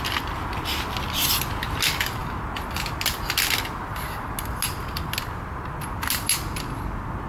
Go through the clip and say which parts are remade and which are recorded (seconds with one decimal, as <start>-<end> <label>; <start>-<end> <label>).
0.0-7.3 recorded